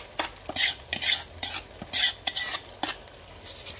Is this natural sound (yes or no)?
yes